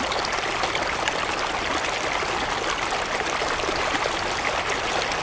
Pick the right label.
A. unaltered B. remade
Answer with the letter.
A